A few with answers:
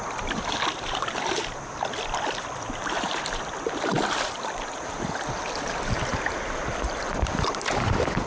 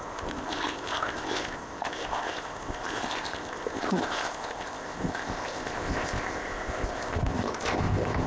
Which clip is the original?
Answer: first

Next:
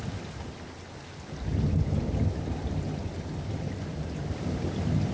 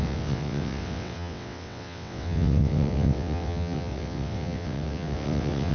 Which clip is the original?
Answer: first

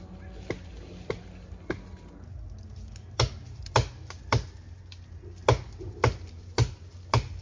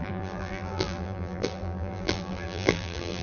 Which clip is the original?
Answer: first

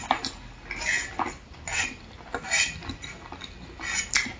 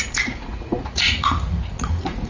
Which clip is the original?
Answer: first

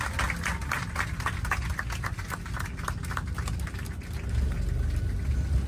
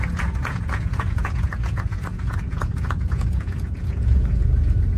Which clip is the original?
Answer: first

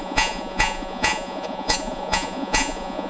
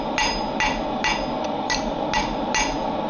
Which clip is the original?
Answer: second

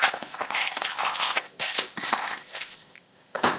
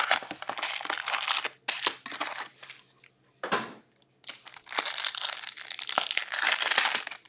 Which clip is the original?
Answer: second